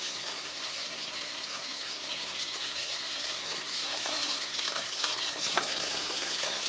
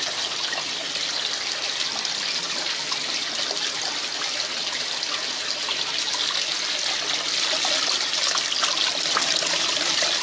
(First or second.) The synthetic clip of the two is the first